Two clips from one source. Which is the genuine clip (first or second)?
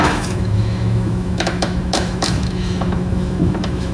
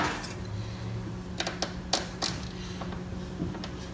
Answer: second